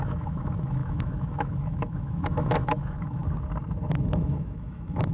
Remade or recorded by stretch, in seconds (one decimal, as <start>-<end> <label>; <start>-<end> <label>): 0.0-3.2 remade; 3.2-4.0 recorded; 4.0-5.1 remade